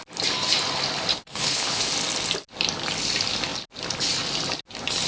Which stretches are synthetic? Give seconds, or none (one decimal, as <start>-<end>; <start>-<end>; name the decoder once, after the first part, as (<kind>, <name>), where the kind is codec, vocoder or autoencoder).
1.1-1.9 (codec, HILCodec)